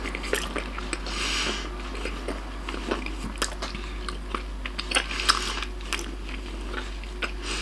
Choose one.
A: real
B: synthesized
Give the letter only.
A